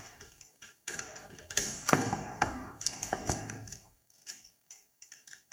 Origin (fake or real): fake